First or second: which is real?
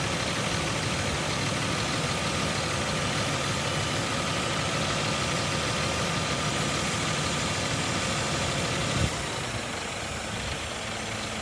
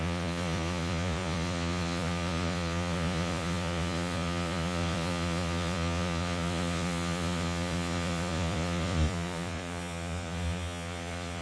first